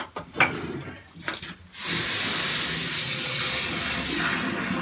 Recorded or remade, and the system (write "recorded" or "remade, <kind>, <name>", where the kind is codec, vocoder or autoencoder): recorded